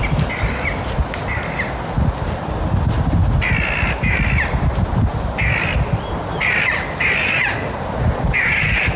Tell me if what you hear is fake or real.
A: real